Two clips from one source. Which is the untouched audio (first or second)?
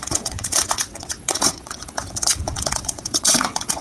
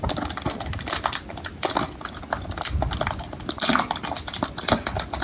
second